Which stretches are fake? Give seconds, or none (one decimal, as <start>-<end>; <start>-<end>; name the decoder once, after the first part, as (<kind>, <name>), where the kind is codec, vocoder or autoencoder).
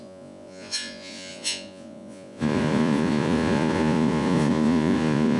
0.0-5.4 (vocoder, Vocos)